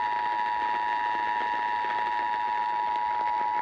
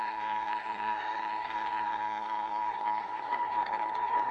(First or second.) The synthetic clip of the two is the second